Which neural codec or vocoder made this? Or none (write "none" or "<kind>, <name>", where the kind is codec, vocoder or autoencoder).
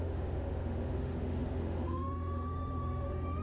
autoencoder, DAC-VAE